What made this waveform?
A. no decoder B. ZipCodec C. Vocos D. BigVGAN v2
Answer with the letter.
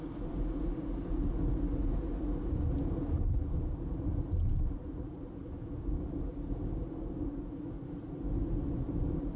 A